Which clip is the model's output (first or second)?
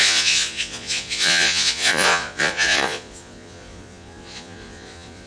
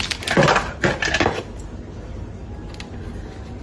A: first